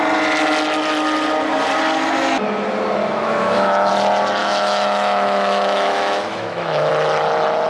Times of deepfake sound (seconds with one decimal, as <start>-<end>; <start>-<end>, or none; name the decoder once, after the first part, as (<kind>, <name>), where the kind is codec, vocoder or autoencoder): 3.0-3.9 (autoencoder, DAC-VAE); 4.4-6.9